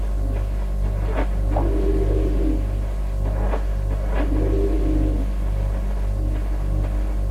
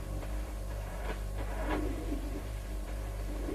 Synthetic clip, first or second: second